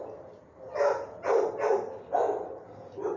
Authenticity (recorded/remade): recorded